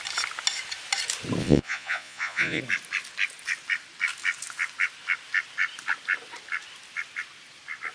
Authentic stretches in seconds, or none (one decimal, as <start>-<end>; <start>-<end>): 0.0-1.4; 2.6-7.9